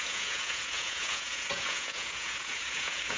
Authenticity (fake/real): fake